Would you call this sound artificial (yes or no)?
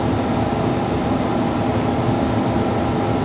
no